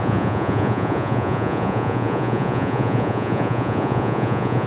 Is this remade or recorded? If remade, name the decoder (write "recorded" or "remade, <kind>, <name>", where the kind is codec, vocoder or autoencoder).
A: remade, vocoder, Vocos